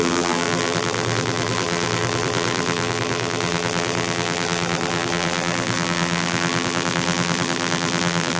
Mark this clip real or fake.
fake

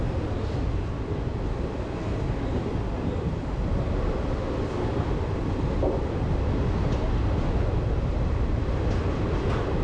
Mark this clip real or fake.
real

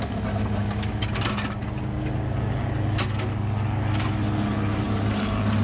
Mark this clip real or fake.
real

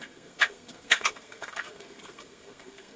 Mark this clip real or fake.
fake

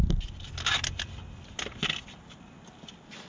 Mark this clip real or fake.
real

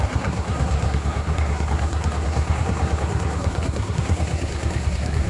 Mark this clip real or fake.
fake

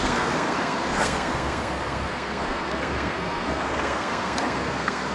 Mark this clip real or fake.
fake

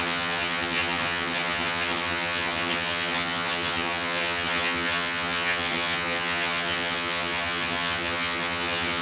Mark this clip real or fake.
fake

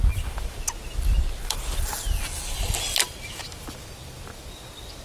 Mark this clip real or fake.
real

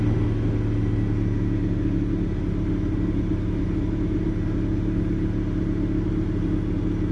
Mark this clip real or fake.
real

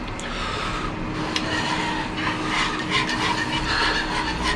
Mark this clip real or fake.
real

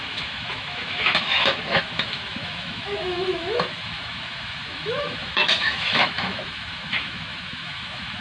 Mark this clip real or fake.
fake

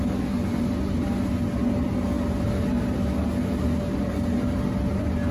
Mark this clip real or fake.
real